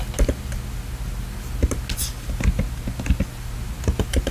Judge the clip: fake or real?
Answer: real